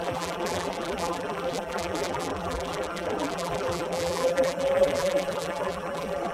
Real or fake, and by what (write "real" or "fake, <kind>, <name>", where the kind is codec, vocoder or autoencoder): fake, vocoder, BigVGAN v2